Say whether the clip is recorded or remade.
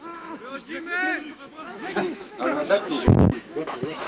remade